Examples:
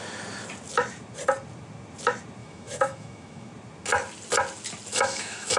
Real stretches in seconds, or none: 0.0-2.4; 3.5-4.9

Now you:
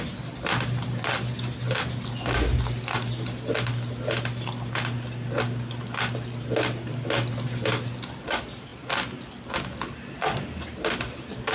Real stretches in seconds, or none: 0.0-11.5

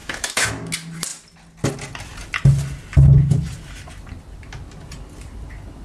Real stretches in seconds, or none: 0.5-5.8

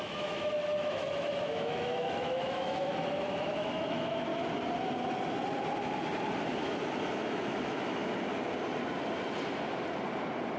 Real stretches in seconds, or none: 4.3-7.1; 8.0-10.6

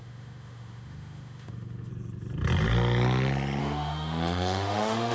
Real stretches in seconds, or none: 1.9-3.6